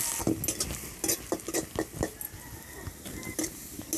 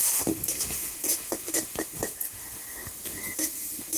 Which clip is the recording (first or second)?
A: first